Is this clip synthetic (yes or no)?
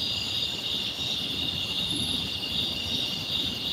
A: yes